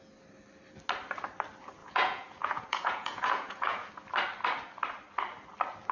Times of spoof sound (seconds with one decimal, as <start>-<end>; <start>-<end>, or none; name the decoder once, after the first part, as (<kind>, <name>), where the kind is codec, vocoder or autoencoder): 1.8-3.9 (vocoder, Vocos)